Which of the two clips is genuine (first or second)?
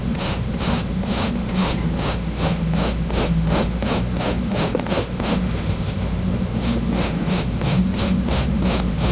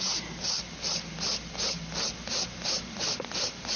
second